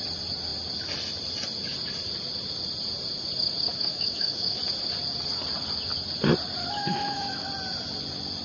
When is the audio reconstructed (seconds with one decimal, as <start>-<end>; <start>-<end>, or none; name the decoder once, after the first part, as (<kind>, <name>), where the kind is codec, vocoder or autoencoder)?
3.7-4.6 (autoencoder, DAC-VAE); 6.6-7.5